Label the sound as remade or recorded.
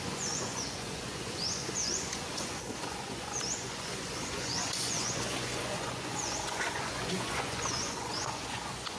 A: remade